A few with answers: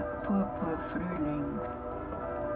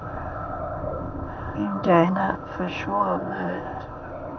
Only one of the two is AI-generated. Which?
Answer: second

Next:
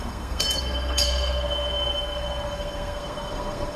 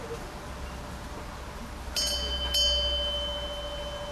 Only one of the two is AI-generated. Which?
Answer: first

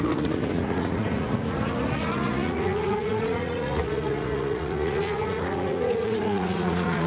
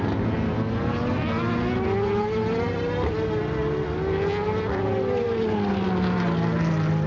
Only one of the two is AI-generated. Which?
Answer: first